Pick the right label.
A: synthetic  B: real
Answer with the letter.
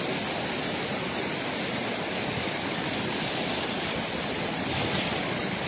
B